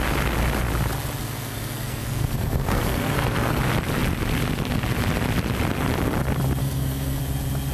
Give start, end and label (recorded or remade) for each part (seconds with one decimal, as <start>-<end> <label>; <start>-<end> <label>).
0.0-1.2 recorded; 1.2-3.6 remade; 3.6-6.6 recorded; 6.6-7.2 remade; 7.2-7.7 recorded